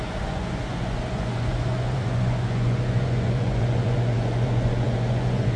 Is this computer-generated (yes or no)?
yes